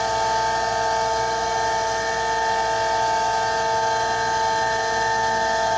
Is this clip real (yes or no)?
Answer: yes